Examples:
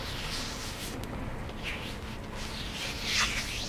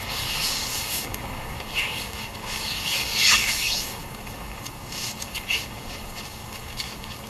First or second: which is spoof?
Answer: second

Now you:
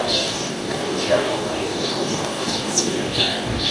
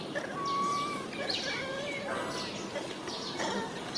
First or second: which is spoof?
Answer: first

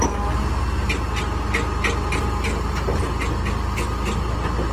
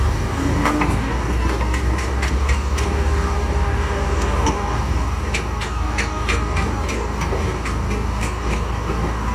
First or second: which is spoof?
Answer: second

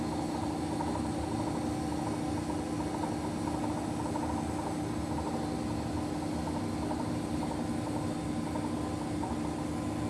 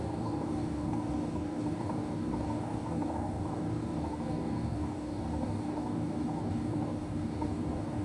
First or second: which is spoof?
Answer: second